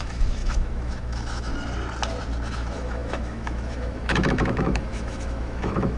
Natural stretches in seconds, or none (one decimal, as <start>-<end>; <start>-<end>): 1.5-2.5